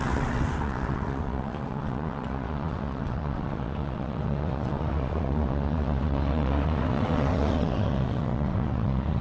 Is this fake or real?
fake